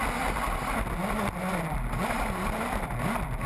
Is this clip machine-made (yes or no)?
no